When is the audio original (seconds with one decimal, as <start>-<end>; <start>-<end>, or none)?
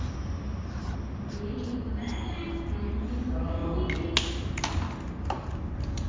0.0-6.1